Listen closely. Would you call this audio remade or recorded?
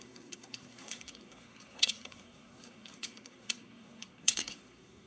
remade